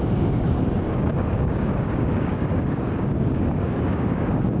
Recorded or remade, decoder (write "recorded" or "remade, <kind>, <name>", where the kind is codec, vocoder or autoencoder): remade, codec, DAC